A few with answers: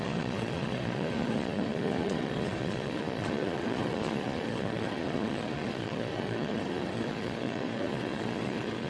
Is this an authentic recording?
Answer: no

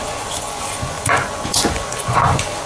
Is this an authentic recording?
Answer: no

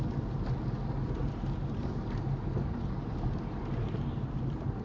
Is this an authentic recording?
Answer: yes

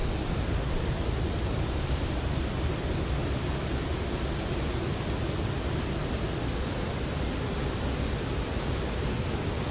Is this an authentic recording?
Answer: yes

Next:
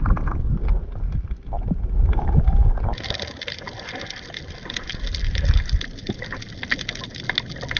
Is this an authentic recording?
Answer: yes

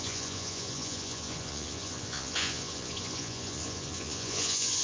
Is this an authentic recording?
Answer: no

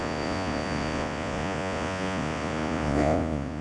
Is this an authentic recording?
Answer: no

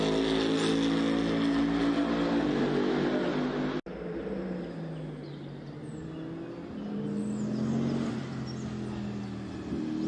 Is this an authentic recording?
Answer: yes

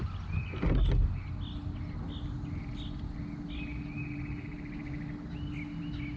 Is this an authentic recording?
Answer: yes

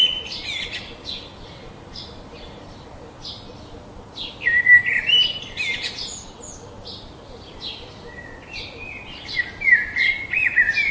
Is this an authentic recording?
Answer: yes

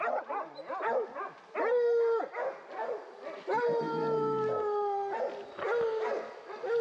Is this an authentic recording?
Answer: yes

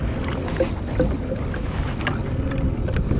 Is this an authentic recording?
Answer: yes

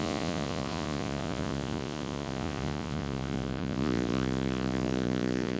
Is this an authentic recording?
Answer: no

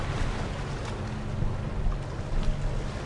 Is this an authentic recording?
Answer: yes